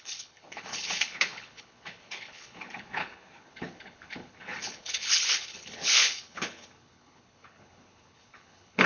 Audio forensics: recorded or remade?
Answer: remade